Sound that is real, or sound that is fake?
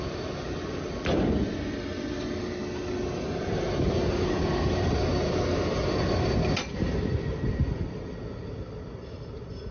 real